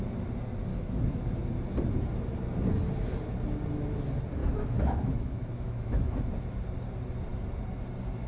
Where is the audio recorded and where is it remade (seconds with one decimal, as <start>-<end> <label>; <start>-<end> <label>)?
0.0-0.7 recorded; 0.7-1.4 remade; 1.4-4.4 recorded; 4.4-6.3 remade; 6.3-8.3 recorded